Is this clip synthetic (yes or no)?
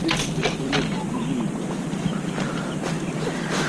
no